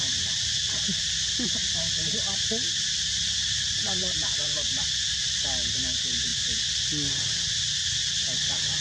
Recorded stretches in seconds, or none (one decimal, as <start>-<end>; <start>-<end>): 0.0-1.6; 5.1-8.8